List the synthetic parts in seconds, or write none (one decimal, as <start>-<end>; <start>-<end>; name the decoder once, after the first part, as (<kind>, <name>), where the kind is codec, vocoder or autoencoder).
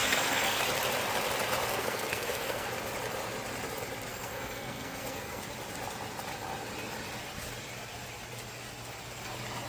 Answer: 0.0-0.6 (codec, SNAC); 1.7-2.7; 4.1-5.4